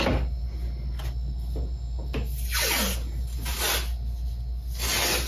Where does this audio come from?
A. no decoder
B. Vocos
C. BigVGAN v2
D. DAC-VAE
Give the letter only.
A